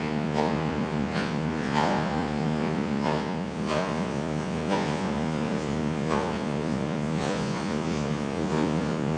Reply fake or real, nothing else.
fake